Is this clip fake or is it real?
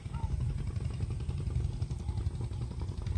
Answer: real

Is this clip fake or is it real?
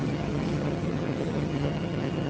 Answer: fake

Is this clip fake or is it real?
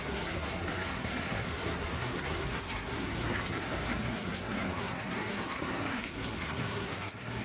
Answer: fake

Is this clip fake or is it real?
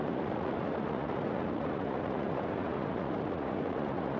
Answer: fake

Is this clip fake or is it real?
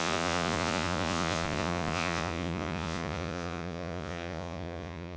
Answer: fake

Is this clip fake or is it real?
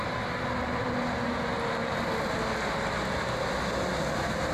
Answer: real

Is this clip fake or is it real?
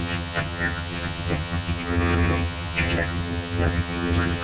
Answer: fake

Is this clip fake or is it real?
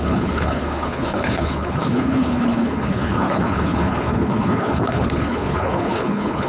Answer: fake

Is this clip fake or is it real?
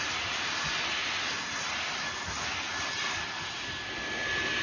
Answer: real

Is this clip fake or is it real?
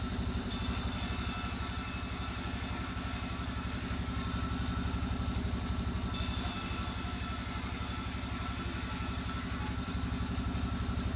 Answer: real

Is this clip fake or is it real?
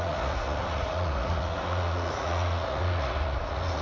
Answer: fake